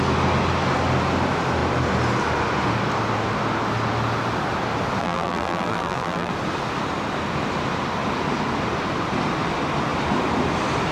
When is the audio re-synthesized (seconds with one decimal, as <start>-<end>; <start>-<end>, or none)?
5.0-6.3